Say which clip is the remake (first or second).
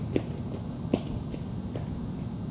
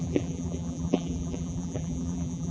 second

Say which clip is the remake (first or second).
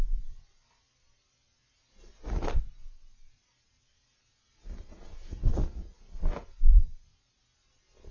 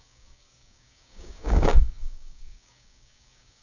second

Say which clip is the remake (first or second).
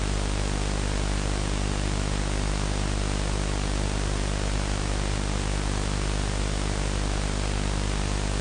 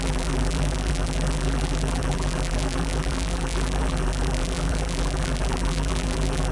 second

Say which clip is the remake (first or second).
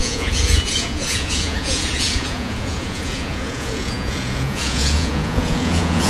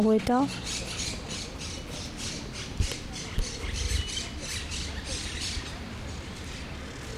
first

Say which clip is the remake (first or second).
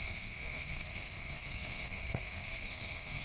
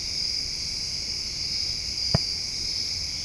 first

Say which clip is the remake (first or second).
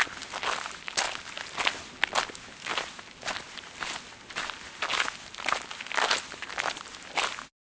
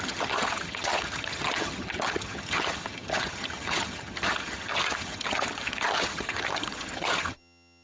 second